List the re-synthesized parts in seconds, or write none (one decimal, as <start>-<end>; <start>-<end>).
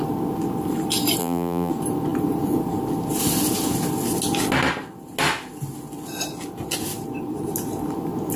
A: 1.2-1.7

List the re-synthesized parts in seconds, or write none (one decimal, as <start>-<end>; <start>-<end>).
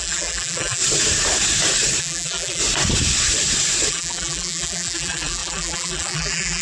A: 0.0-0.8; 2.0-2.6; 3.9-6.6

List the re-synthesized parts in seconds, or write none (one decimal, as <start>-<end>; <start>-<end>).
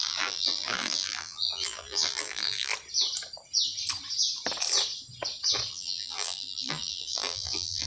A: 0.0-2.7; 5.7-7.9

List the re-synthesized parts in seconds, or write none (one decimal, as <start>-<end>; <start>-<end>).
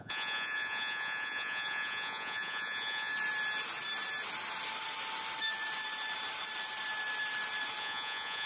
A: 0.0-3.1; 7.8-8.5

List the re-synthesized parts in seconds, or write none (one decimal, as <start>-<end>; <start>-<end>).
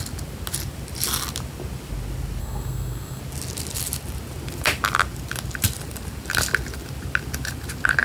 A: 2.4-3.2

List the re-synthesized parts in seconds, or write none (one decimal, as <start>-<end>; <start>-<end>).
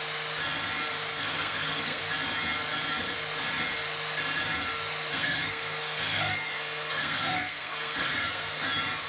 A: 1.1-2.0; 5.1-8.7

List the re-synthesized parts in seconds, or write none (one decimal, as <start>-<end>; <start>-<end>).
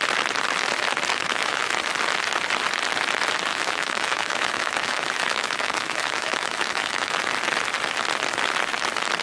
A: 1.1-1.7; 3.5-7.3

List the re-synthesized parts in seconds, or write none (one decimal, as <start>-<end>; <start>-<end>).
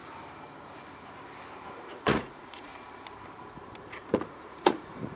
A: 1.9-2.7; 3.8-5.2